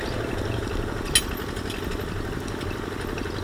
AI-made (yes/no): no